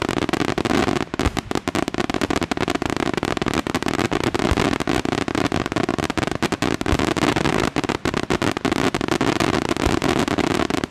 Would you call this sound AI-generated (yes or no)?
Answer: no